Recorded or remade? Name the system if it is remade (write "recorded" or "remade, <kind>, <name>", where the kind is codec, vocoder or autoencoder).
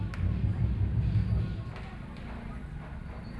recorded